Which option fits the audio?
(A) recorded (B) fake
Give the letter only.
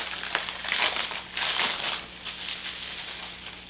A